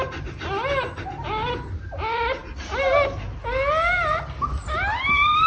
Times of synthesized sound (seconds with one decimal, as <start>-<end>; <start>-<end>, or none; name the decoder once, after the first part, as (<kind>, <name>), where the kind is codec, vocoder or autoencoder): none